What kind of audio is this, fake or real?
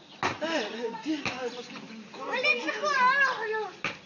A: real